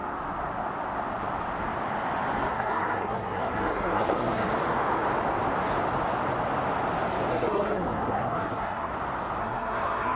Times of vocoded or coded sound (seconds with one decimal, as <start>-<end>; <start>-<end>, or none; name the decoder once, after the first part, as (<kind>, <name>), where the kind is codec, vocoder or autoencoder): 2.5-4.5 (codec, SNAC); 7.3-8.9; 9.4-10.2